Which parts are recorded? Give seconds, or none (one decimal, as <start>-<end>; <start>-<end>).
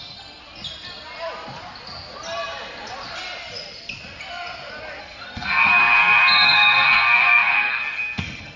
0.4-5.0